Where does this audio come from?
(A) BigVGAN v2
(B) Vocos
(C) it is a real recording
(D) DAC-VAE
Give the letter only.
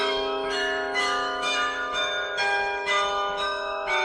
D